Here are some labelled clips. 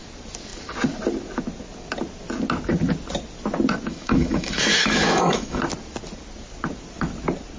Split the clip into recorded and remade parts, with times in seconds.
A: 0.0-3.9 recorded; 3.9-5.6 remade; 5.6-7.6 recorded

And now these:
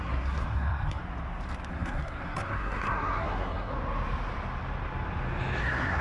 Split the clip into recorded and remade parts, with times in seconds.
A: 0.0-1.0 remade; 1.0-1.7 recorded; 1.7-3.7 remade; 3.7-5.6 recorded; 5.6-6.0 remade

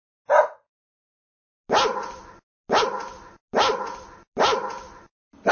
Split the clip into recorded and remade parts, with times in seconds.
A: 0.0-5.5 recorded

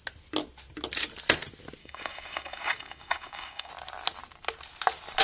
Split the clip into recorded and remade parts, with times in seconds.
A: 0.0-1.8 recorded; 1.8-3.7 remade; 3.7-5.2 recorded

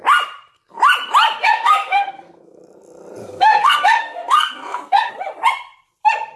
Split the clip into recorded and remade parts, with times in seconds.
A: 0.0-1.4 recorded; 1.4-2.6 remade; 2.6-3.2 recorded; 3.2-5.1 remade; 5.1-6.4 recorded

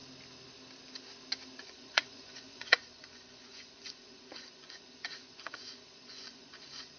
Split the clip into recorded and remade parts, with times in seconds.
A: 0.0-1.6 recorded; 1.6-7.0 remade

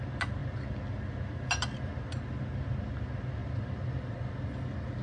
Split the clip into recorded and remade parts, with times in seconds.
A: 0.0-5.0 recorded